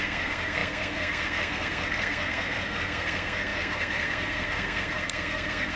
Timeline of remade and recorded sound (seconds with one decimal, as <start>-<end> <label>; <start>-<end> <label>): 0.0-5.8 remade